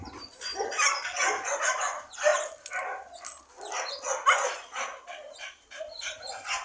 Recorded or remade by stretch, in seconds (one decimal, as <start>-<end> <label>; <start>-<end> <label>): 0.0-6.6 recorded